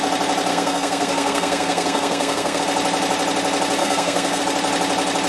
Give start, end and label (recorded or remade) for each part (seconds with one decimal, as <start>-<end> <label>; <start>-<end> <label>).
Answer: 0.0-0.5 recorded; 0.5-2.6 remade; 2.6-3.8 recorded; 3.8-4.4 remade; 4.4-5.3 recorded